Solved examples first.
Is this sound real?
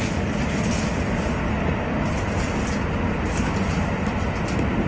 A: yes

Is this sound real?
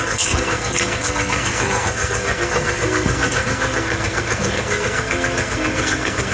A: no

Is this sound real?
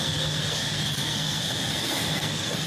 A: no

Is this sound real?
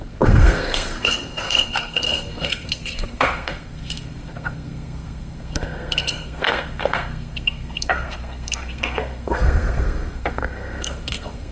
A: no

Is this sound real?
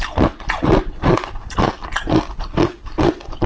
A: yes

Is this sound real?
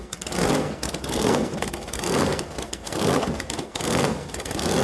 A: no